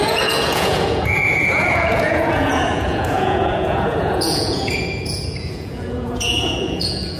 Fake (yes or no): yes